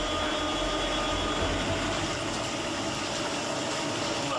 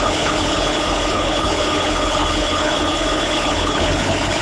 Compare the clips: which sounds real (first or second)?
first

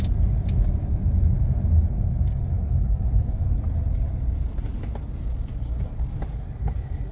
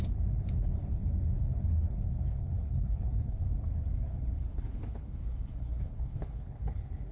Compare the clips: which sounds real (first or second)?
first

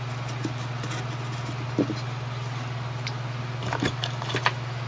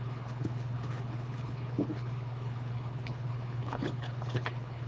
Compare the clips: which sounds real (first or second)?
first